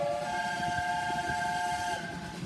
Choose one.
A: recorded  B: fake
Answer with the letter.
A